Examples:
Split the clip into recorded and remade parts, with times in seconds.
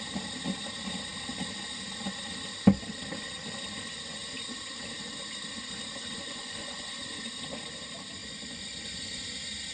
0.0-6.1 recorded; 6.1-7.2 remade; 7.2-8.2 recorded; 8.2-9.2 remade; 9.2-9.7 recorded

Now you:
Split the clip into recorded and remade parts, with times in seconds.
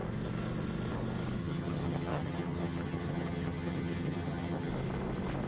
0.0-1.4 recorded; 1.4-4.7 remade; 4.7-5.5 recorded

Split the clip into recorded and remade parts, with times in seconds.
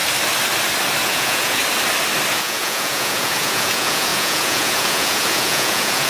0.0-1.0 recorded; 1.0-1.6 remade; 1.6-2.3 recorded; 2.3-6.1 remade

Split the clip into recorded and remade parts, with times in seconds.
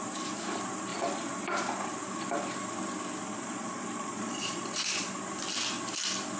0.0-0.9 recorded; 0.9-1.5 remade; 1.5-3.3 recorded; 3.3-5.2 remade; 5.2-6.4 recorded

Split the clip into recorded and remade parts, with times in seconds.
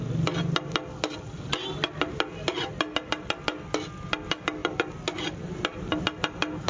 0.0-6.7 recorded